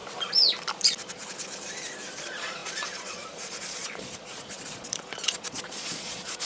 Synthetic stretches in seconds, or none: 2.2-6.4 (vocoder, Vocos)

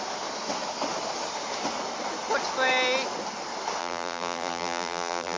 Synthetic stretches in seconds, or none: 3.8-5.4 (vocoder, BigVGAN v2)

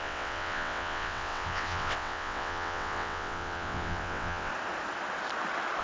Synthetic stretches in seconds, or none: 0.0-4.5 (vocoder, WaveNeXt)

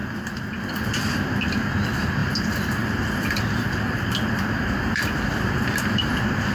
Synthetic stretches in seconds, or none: 0.0-1.0 (vocoder, BigVGAN v2); 2.2-6.1

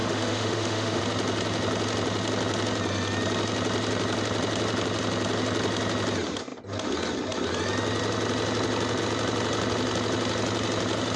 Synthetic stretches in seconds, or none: 0.0-1.0 (autoencoder, DAC-VAE)

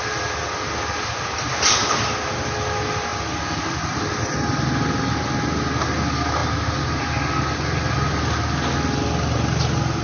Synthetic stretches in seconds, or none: none

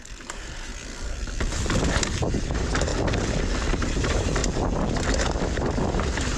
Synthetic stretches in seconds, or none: 0.0-0.7 (vocoder, BigVGAN v2); 2.3-2.9; 3.7-4.4; 5.8-6.4

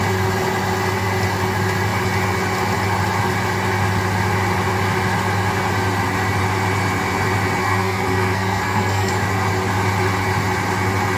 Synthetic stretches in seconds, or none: 7.6-9.1 (codec, SNAC)